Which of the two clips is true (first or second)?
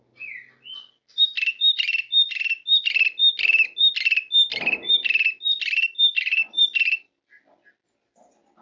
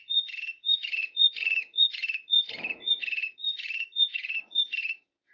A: first